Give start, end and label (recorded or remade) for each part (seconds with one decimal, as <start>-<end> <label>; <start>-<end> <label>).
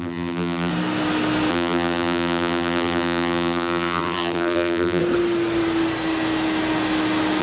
0.0-0.7 remade; 0.7-1.5 recorded; 1.5-5.0 remade; 5.0-7.4 recorded